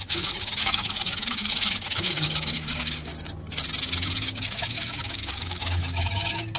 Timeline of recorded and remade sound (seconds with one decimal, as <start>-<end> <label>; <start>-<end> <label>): 0.0-3.1 remade; 3.1-3.8 recorded; 3.8-6.6 remade